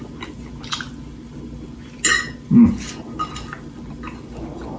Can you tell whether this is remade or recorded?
recorded